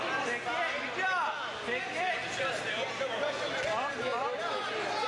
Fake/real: real